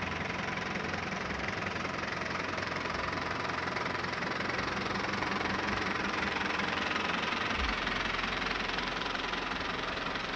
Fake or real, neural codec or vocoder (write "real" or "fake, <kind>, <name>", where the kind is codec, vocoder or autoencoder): fake, vocoder, BigVGAN v2